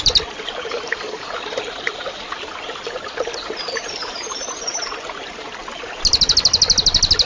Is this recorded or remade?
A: remade